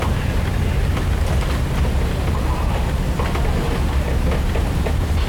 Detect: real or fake real